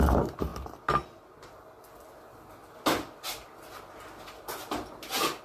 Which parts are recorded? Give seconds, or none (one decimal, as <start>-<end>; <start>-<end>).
0.0-5.4